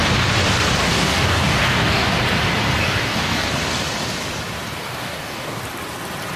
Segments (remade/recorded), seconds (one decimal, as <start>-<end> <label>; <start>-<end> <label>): 0.0-0.8 recorded; 0.8-2.2 remade; 2.2-2.8 recorded; 2.8-3.5 remade; 3.5-4.8 recorded; 4.8-5.6 remade; 5.6-6.4 recorded